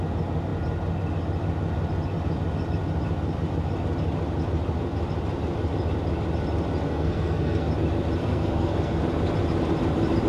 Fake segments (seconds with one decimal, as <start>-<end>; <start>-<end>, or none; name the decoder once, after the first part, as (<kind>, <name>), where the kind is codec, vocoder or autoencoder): 6.9-7.7 (codec, SNAC); 8.2-9.0